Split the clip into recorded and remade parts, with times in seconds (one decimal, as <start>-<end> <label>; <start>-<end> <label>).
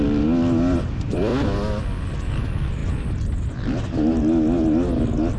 0.0-5.4 recorded